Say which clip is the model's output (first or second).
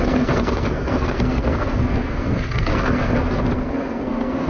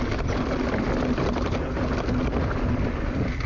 first